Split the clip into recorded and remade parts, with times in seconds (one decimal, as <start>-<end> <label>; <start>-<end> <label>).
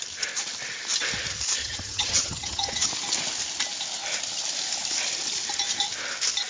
0.0-1.6 recorded; 1.6-2.9 remade; 2.9-6.5 recorded